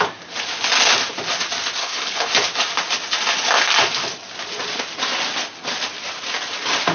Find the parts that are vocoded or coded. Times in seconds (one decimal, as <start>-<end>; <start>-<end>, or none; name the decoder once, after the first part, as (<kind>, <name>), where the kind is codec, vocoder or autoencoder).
1.8-2.3 (codec, HILCodec)